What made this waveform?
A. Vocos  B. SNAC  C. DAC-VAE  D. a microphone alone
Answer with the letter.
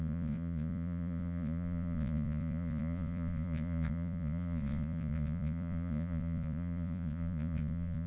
A